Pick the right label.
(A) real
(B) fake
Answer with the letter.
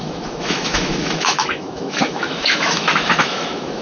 B